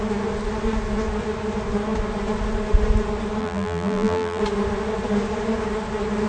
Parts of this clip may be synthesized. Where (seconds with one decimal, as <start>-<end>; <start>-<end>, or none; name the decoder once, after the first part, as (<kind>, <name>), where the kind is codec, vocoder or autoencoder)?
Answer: 3.4-4.4 (vocoder, BigVGAN v2)